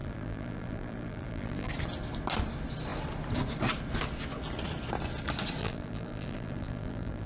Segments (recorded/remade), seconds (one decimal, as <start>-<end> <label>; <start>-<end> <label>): 0.0-1.7 remade; 1.7-5.6 recorded; 5.6-7.3 remade